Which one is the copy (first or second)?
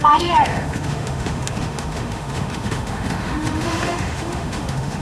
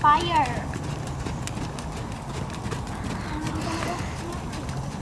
first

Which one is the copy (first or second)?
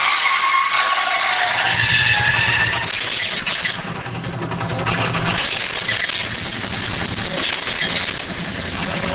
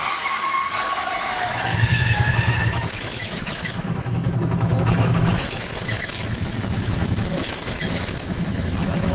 second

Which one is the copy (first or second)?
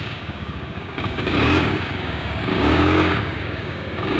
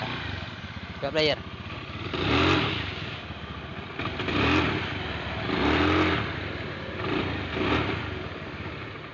first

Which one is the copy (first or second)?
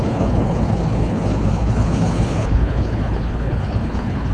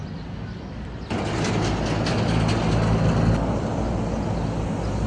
first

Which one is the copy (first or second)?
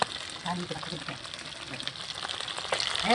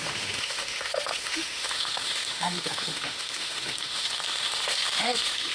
second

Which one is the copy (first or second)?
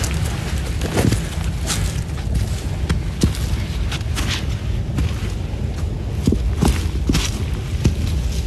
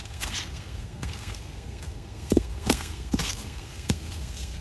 second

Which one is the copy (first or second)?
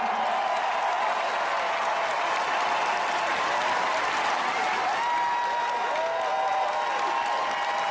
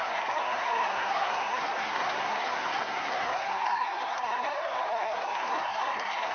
second